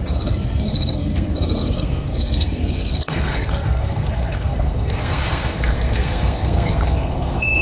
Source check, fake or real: fake